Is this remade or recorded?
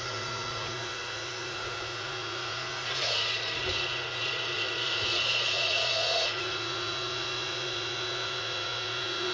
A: remade